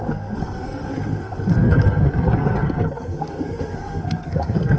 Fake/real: fake